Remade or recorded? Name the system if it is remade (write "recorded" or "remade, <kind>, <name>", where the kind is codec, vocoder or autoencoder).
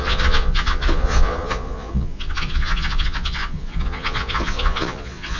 remade, vocoder, Vocos